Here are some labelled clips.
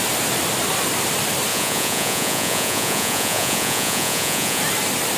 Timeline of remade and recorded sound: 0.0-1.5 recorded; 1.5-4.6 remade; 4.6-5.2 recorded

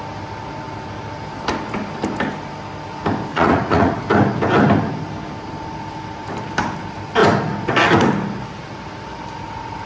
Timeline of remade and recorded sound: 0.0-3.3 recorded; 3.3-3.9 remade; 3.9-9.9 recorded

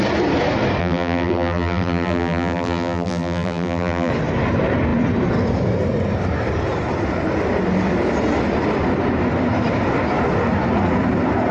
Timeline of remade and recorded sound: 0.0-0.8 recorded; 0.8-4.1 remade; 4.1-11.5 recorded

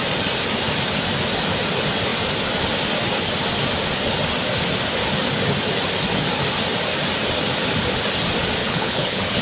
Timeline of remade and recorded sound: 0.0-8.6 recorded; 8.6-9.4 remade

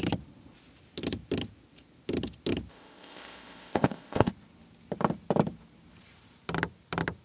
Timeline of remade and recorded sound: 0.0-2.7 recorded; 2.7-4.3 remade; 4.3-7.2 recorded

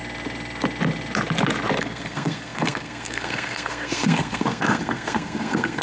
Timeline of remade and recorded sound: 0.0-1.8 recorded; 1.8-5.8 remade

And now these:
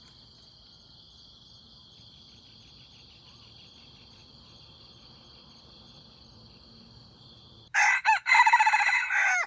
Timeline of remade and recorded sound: 0.0-9.5 recorded